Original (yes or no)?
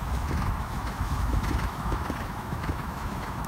no